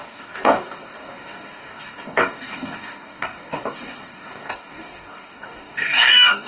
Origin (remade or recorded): remade